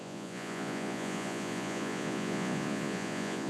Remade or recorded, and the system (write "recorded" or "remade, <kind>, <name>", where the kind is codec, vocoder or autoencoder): remade, vocoder, Vocos